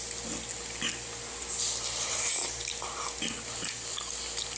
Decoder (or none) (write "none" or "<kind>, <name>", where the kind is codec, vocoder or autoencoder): none